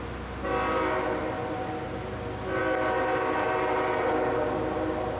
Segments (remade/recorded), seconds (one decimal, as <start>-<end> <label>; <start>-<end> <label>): 0.0-5.2 recorded